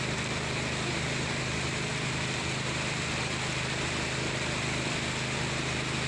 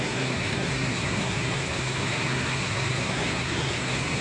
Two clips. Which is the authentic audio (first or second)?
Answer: first